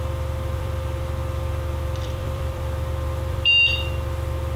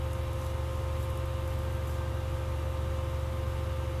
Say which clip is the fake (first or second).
first